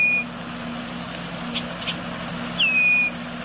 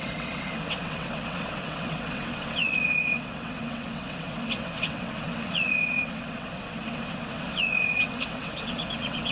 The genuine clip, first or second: first